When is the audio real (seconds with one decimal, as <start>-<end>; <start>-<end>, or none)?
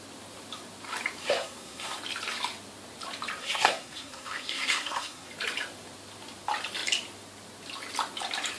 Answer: 0.0-1.2; 2.0-3.4; 5.3-8.6